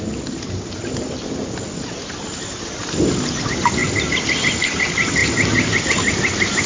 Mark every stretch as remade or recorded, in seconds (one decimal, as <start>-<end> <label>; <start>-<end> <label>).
0.0-6.7 recorded